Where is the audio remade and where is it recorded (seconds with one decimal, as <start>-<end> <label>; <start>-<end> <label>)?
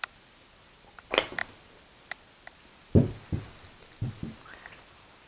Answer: 0.0-5.3 recorded